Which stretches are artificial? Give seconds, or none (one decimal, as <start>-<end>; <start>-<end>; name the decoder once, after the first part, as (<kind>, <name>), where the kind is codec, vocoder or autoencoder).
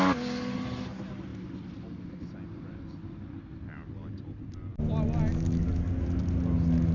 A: none